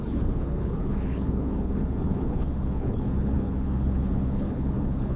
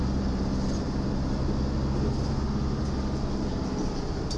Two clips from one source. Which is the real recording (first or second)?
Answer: second